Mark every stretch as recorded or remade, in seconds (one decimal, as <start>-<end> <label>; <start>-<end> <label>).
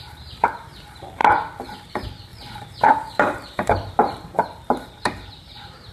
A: 0.0-1.2 remade; 1.2-1.9 recorded; 1.9-5.9 remade